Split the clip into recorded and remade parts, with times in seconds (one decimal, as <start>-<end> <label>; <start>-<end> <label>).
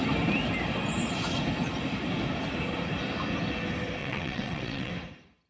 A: 0.0-4.0 recorded; 4.0-4.9 remade; 4.9-5.5 recorded